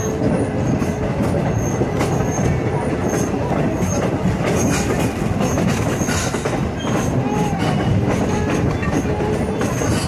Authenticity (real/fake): real